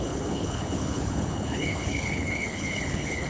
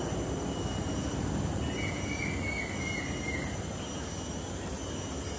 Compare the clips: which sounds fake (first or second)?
first